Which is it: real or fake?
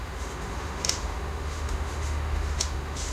fake